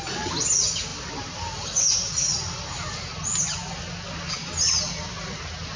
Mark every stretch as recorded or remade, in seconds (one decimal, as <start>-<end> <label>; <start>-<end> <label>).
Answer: 0.0-5.8 recorded